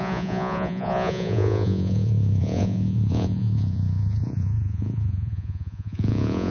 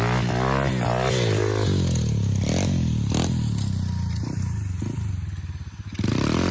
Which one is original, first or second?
second